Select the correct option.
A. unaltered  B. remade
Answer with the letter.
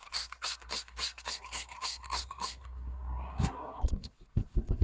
B